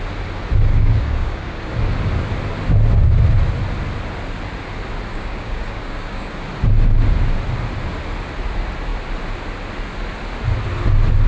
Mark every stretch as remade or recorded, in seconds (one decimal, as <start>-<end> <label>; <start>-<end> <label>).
0.0-0.7 recorded; 0.7-1.7 remade; 1.7-5.1 recorded; 5.1-6.3 remade; 6.3-11.3 recorded